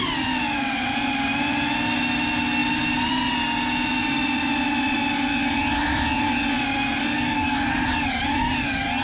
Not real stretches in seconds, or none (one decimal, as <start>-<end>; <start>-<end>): none